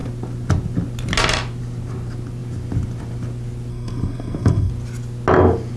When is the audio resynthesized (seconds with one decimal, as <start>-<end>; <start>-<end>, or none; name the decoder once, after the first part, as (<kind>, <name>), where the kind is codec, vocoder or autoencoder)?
3.7-4.7 (codec, SNAC)